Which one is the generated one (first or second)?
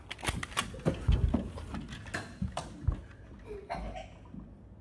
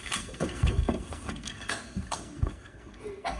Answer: second